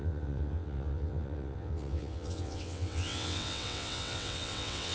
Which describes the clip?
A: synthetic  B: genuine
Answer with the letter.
A